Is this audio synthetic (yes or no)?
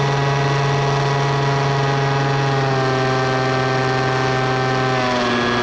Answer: no